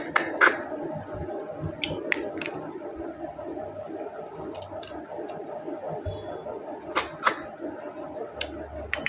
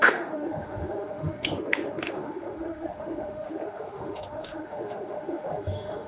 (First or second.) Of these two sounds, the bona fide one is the first